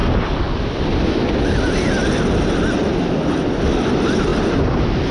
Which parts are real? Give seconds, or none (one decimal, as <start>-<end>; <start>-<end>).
0.0-5.1